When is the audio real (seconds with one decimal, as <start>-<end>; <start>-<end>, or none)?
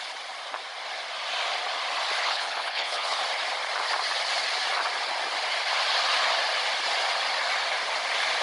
0.0-2.2; 3.2-8.4